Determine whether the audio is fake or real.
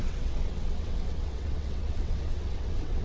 fake